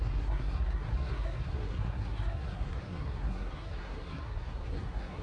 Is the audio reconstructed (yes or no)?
yes